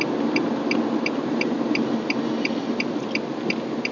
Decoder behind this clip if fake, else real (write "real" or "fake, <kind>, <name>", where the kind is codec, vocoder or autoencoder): real